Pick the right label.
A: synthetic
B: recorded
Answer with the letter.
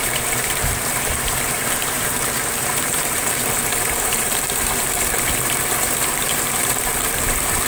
A